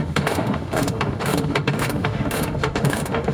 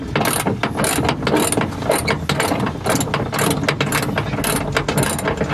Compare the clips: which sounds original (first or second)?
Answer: second